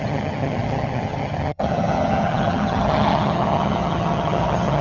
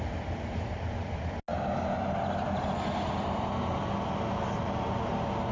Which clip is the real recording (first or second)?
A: second